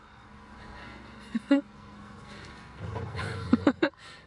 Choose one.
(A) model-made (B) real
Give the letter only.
A